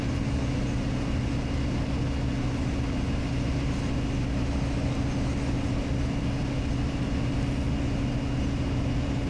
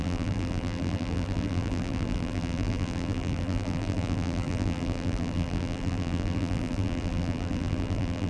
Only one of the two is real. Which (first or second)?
first